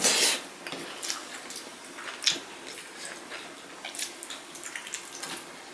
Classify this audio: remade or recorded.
recorded